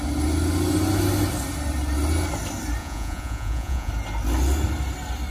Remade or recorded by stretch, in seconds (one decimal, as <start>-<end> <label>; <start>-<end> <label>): 0.0-2.8 recorded; 2.8-3.9 remade; 3.9-5.3 recorded